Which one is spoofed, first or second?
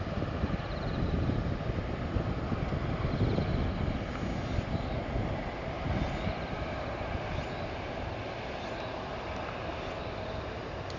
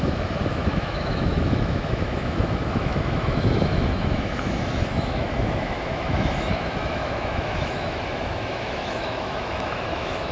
second